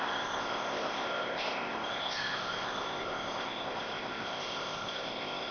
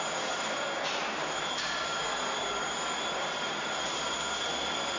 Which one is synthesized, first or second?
first